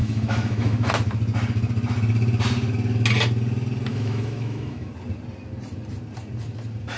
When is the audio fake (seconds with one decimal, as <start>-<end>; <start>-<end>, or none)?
0.0-0.9; 3.9-4.9